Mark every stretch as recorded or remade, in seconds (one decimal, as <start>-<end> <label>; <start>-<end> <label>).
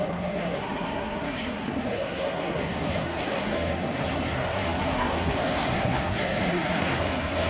0.0-7.5 remade